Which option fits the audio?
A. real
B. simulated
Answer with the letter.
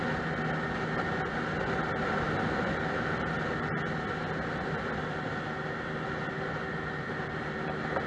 A